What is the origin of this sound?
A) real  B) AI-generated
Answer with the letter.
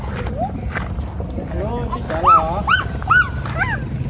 A